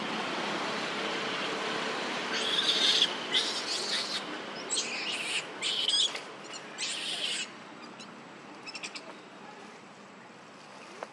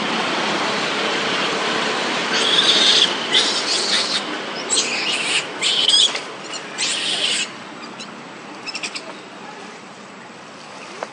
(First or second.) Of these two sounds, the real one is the first